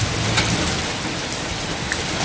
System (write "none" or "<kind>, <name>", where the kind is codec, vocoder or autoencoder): none